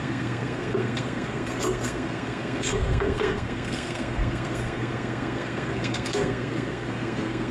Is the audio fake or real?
fake